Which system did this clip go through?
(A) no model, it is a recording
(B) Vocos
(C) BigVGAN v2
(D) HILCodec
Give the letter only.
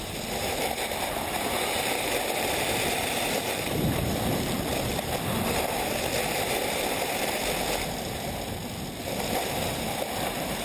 C